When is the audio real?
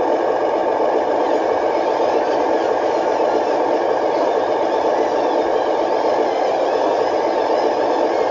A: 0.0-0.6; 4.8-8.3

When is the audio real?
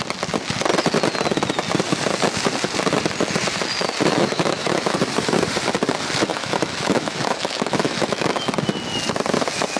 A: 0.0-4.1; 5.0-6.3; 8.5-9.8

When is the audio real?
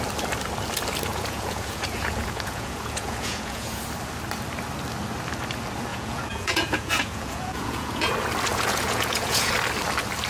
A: 0.0-1.1; 3.8-5.9; 8.1-8.5; 9.5-10.3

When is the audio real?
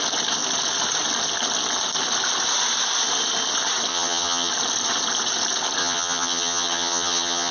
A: 0.0-3.9; 4.5-5.8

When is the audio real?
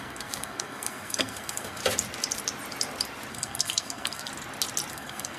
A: 1.8-3.3; 4.3-4.9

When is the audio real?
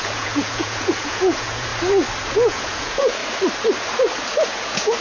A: 1.7-2.3; 3.2-4.3